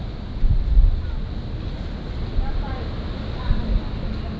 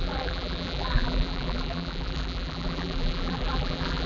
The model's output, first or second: second